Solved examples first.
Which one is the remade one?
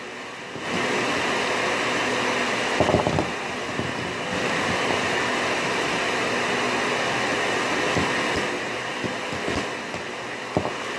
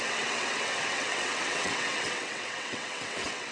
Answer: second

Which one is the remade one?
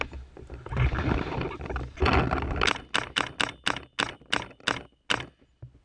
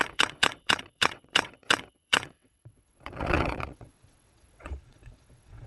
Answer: second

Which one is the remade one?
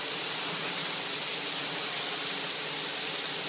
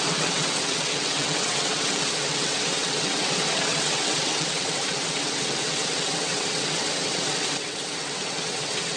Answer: second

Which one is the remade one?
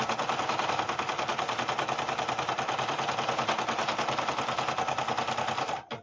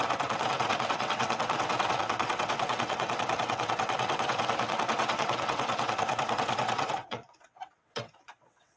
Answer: second